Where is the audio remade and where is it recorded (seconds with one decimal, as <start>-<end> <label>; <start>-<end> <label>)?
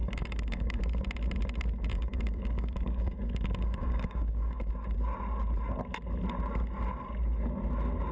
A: 0.0-0.8 remade; 0.8-1.9 recorded; 1.9-4.7 remade; 4.7-8.1 recorded